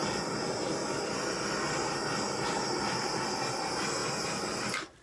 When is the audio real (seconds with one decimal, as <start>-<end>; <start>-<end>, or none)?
0.0-5.0